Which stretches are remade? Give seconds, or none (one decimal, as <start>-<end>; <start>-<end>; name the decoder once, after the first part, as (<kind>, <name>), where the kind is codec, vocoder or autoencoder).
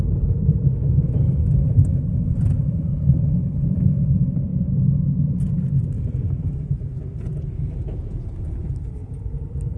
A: 0.0-9.8 (vocoder, BigVGAN v2)